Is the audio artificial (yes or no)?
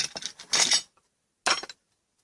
no